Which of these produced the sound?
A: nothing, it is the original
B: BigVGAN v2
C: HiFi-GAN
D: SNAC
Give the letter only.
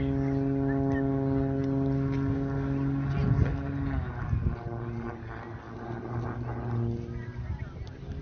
A